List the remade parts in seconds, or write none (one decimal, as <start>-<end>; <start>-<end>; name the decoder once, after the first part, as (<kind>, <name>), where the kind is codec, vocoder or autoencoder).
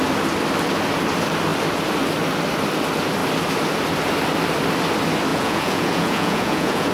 5.3-6.9 (vocoder, Vocos)